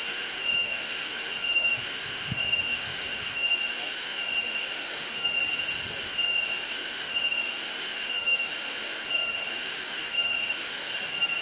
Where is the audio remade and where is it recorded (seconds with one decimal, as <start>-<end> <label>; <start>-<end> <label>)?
0.0-5.4 remade; 5.4-6.0 recorded; 6.0-10.9 remade; 10.9-11.4 recorded